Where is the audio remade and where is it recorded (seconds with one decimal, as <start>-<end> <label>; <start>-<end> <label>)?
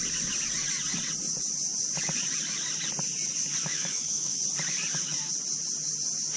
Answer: 0.0-3.6 recorded; 3.6-4.4 remade; 4.4-6.4 recorded